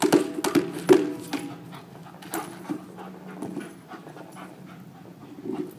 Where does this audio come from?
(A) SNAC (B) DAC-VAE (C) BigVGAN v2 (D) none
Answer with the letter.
D